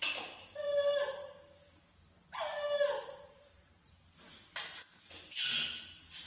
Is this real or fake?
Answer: real